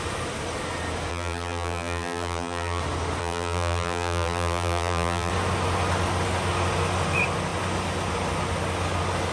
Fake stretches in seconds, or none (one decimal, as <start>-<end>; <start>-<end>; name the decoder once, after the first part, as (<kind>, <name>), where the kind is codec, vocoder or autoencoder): 1.1-2.8 (vocoder, BigVGAN v2); 3.2-5.3